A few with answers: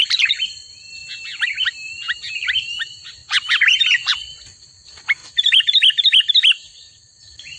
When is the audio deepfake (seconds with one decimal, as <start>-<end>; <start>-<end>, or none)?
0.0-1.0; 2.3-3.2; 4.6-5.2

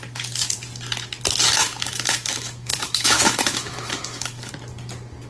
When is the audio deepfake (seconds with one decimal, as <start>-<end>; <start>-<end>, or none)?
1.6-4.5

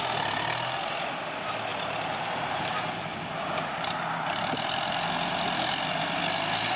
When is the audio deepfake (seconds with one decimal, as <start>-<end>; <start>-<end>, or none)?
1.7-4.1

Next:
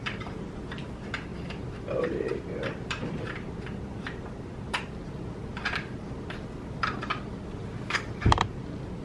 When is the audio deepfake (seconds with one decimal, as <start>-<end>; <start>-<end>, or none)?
1.3-5.1; 5.5-8.4